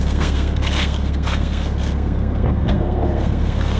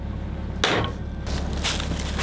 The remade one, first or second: first